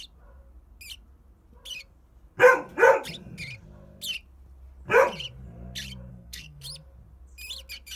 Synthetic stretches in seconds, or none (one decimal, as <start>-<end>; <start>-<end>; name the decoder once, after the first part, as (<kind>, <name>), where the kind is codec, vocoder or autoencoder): 6.1-6.6 (codec, SNAC)